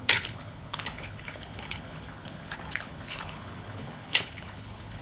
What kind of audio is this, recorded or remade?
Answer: remade